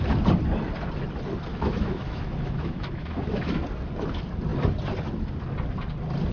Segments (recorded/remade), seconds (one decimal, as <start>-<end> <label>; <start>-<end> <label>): 0.0-1.5 recorded; 1.5-3.6 remade; 3.6-6.3 recorded